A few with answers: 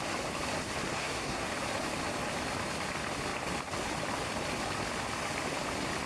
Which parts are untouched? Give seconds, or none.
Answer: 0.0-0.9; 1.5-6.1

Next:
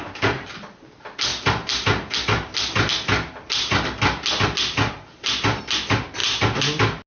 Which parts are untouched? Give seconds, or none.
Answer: 0.0-7.1

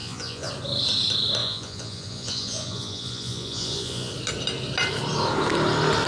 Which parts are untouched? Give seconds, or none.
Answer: 0.5-1.4; 4.1-6.1

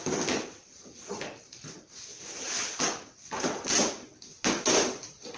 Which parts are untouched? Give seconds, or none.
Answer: 0.0-5.4

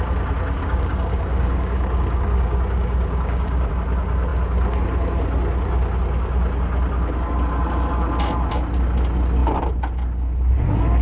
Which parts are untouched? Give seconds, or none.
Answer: 0.0-0.6; 3.7-11.0

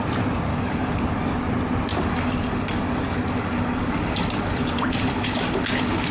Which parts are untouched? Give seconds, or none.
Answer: 0.0-0.5; 1.0-1.9; 5.6-6.1